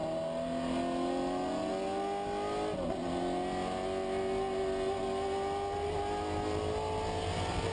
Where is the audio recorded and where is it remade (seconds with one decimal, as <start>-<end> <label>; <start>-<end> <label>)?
0.0-7.7 recorded